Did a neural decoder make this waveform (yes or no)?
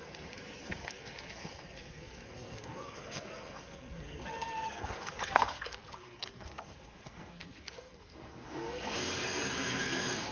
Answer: yes